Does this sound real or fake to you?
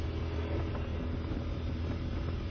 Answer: real